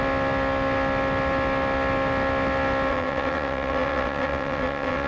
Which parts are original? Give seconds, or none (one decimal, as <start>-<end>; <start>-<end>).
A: 0.0-2.9